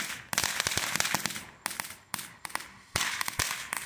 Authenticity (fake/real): real